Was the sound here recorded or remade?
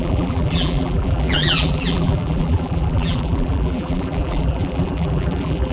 remade